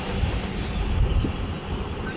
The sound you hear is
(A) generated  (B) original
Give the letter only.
B